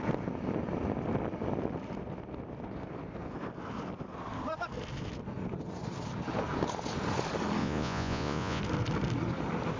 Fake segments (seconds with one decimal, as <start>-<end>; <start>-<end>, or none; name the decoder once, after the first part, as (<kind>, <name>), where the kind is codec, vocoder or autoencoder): 7.6-8.6 (vocoder, Vocos)